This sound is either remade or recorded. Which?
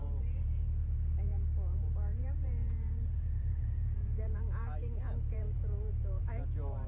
remade